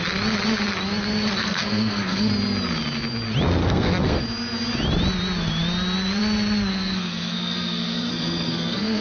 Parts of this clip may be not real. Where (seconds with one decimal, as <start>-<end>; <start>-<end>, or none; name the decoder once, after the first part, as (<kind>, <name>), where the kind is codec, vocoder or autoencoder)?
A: 1.4-2.3 (codec, SNAC); 3.6-4.2; 6.7-9.0